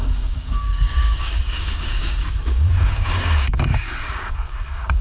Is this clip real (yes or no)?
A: no